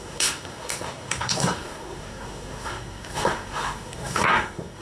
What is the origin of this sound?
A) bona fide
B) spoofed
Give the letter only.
B